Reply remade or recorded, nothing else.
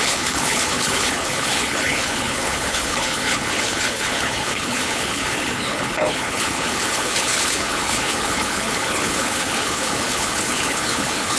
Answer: remade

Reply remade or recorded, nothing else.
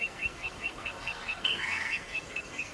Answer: remade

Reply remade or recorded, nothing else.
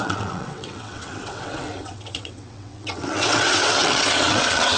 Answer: remade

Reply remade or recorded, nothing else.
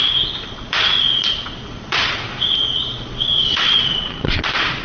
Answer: remade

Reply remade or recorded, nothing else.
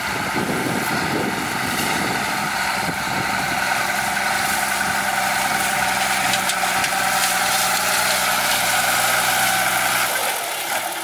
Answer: recorded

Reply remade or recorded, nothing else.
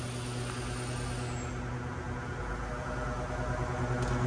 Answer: recorded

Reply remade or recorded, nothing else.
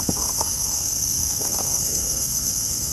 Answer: remade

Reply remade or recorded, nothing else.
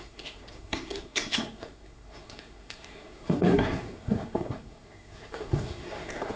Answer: remade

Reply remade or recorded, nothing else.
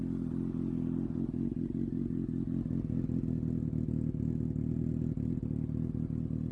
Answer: recorded